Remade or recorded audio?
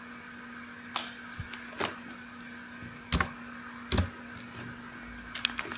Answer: recorded